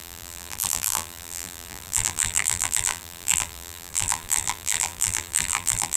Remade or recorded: remade